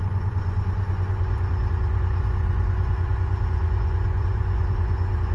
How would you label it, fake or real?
fake